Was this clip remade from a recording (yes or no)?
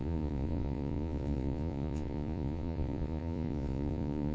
yes